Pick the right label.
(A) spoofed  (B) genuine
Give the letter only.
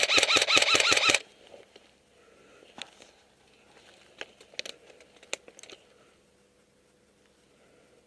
B